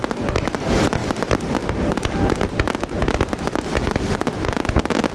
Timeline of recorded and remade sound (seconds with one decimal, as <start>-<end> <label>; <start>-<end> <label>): 0.0-5.1 remade